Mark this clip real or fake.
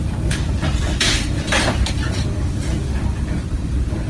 fake